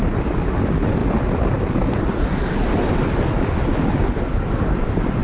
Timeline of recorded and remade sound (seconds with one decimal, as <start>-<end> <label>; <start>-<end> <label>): 0.0-5.2 recorded